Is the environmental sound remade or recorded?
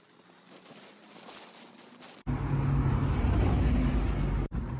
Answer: recorded